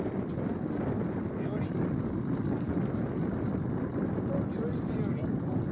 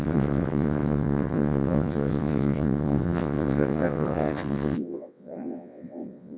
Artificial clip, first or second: second